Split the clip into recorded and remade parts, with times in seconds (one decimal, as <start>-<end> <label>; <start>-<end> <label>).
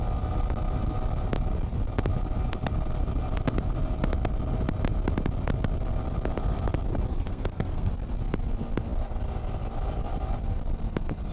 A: 0.0-7.1 recorded; 7.1-7.9 remade; 7.9-11.3 recorded